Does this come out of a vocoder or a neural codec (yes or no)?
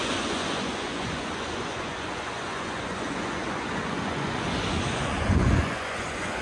yes